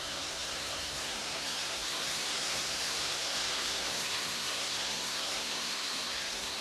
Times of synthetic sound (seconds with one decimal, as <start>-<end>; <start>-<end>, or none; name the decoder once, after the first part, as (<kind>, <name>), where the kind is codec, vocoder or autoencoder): 0.0-6.6 (codec, SNAC)